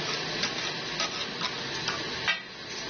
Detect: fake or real real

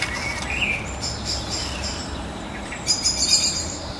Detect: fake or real fake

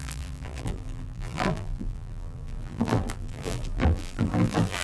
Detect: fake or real fake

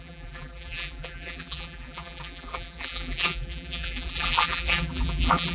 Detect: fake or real fake